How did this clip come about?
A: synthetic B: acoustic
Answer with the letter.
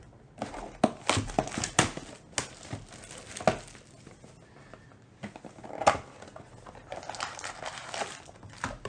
B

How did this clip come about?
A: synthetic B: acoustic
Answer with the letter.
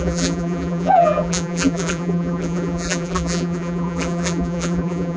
A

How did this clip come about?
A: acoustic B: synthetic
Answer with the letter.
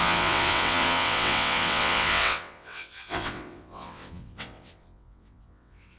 B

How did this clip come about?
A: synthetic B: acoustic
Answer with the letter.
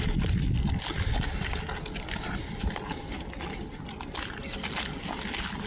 B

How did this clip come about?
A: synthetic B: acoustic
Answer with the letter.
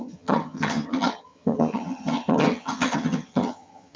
A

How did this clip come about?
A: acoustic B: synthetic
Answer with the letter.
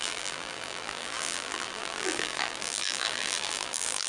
B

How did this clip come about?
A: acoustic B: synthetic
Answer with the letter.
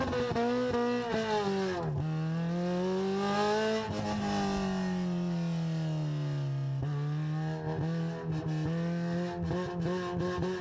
A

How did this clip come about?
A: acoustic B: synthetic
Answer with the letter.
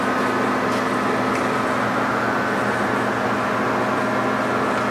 A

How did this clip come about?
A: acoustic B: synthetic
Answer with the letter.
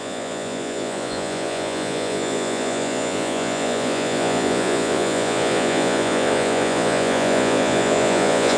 B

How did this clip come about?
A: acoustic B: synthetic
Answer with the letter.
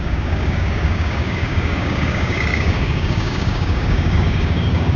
B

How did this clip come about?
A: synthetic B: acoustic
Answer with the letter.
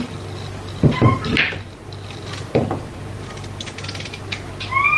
B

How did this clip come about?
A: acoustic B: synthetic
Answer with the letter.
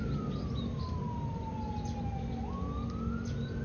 A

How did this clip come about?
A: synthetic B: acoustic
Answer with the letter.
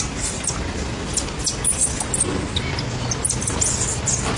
B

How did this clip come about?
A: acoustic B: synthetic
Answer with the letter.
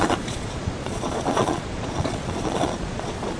B